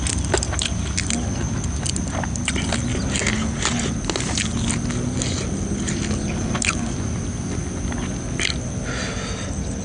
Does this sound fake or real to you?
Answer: real